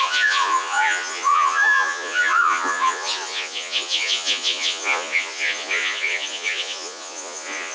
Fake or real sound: fake